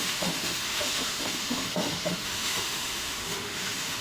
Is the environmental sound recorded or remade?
remade